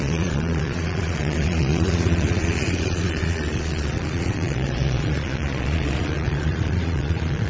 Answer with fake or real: fake